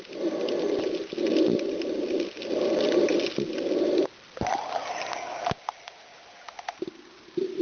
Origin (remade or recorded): recorded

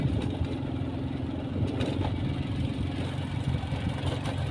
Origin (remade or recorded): recorded